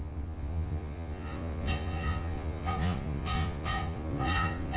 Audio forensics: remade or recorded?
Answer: remade